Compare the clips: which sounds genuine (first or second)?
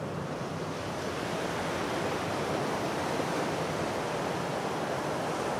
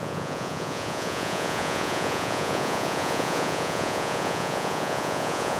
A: first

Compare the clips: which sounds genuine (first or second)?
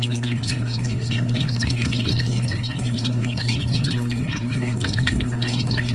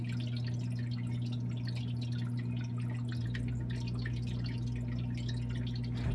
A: second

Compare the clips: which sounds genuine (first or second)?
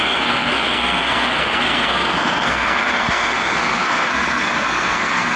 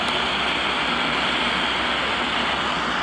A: second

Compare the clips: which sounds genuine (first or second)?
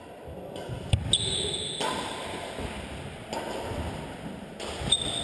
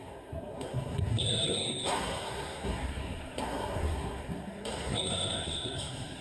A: first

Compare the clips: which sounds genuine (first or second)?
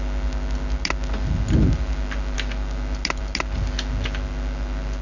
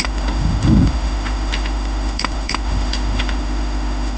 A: first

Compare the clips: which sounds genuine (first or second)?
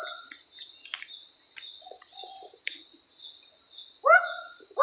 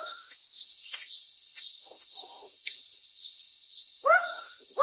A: first